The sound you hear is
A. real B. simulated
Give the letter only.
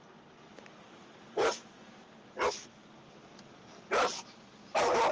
A